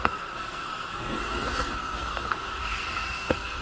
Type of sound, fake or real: fake